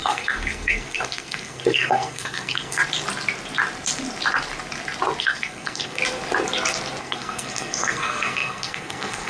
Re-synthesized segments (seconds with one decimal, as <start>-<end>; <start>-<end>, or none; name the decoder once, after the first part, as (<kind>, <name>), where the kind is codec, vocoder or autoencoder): 0.0-2.8 (codec, SNAC); 5.2-6.0; 7.0-9.3